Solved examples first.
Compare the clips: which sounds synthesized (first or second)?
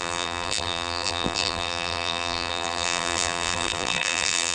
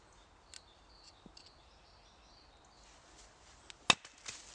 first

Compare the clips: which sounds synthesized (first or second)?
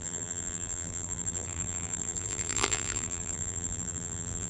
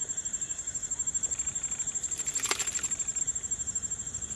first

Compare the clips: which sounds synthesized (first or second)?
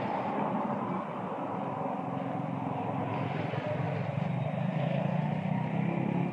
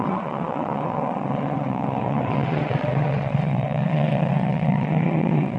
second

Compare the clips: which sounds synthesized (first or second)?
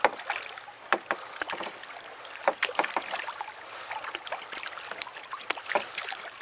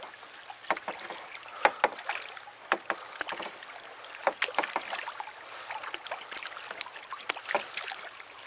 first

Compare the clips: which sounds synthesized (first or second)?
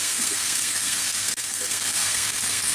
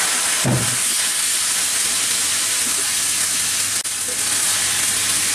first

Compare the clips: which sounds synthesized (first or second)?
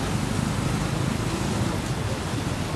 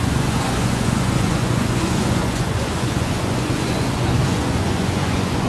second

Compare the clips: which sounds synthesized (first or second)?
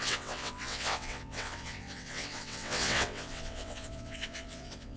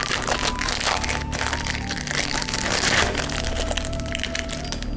first